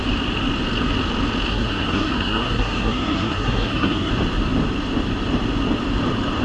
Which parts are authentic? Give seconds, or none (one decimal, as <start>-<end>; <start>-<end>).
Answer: 0.0-1.5; 4.1-6.4